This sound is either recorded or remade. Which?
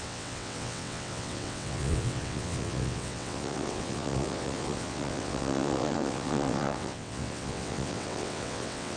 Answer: remade